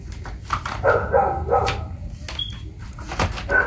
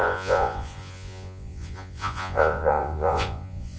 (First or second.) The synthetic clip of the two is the second